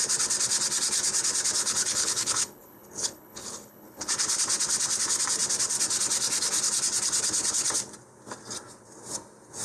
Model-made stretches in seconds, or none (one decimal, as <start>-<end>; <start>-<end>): 1.6-4.1